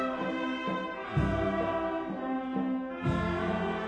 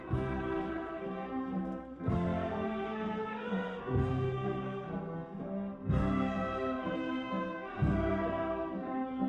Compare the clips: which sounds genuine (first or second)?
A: first